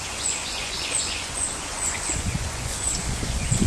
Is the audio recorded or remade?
remade